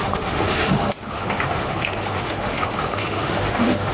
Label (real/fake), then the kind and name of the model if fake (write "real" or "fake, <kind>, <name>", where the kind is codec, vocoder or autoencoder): fake, autoencoder, DAC-VAE